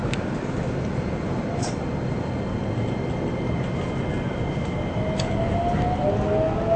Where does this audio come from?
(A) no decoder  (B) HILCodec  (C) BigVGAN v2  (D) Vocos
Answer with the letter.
A